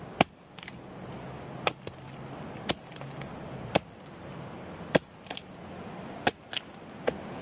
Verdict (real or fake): real